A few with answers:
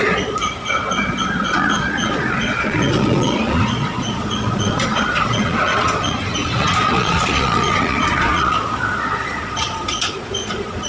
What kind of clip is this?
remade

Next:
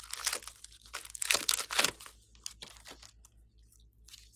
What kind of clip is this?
recorded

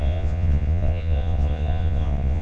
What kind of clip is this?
remade